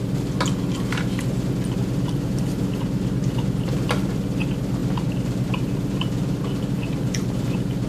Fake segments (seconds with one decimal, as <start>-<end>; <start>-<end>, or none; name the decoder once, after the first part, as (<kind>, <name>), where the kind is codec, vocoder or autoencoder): none